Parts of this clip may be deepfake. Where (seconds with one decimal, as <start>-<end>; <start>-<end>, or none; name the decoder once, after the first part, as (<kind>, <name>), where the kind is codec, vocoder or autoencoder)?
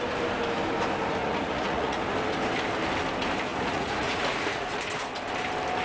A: 1.2-2.0 (vocoder, Vocos); 3.5-4.7